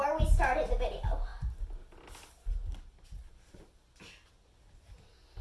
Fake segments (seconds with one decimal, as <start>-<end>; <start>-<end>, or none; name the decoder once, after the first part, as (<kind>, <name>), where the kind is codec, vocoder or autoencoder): none